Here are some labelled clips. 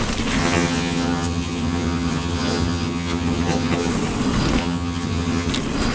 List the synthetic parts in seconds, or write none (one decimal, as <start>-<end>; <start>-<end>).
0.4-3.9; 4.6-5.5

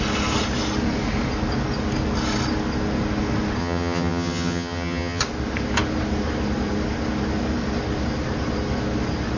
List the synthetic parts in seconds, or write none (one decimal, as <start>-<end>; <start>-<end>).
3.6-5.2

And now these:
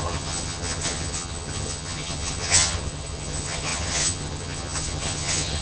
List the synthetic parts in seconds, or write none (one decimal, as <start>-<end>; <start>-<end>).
0.0-5.6